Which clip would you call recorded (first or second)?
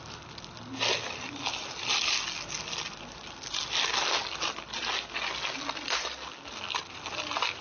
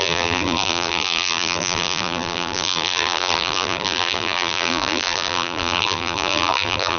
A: first